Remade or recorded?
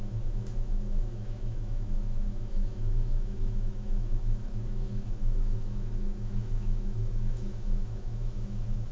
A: remade